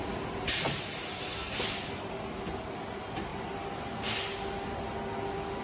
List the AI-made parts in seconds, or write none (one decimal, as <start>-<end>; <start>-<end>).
none